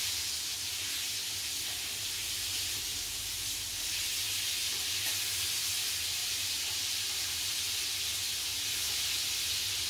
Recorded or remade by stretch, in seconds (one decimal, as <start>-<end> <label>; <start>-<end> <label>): 0.0-2.0 recorded; 2.0-3.7 remade; 3.7-6.2 recorded; 6.2-7.5 remade; 7.5-9.9 recorded